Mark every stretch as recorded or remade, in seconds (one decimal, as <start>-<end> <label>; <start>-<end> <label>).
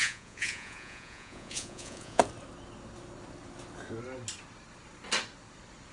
0.0-2.2 remade; 2.2-5.9 recorded